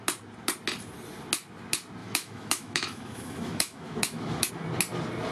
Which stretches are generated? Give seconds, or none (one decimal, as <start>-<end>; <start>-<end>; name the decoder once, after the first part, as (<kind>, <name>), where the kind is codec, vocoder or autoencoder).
2.0-4.5 (autoencoder, DAC-VAE)